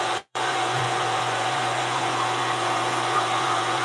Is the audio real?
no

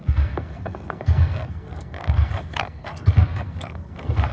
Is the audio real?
no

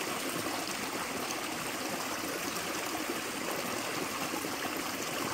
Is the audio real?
yes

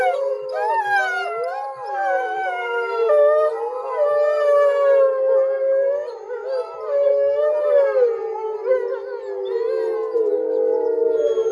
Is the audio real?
yes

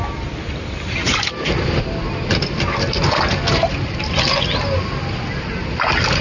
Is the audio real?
yes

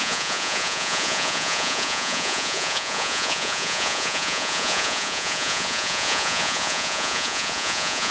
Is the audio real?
no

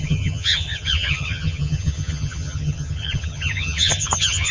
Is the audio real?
no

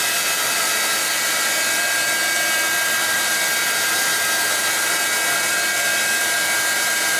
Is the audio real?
yes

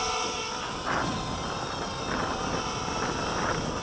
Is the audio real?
yes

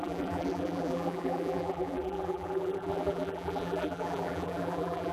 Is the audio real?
no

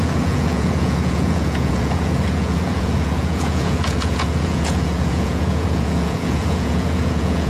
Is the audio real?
no